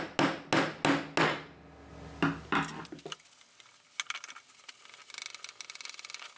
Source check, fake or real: real